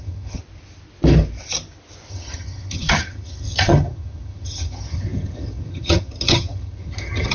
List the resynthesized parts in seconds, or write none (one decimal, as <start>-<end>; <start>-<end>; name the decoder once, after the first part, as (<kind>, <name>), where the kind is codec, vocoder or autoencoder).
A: 0.0-0.4 (vocoder, HiFi-GAN); 2.1-7.3